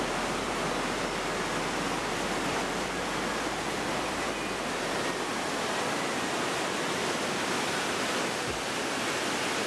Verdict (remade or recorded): recorded